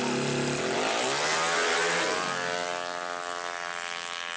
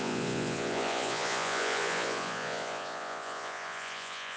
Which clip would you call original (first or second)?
first